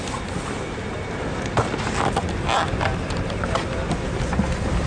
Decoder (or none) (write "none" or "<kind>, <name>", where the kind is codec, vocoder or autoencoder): none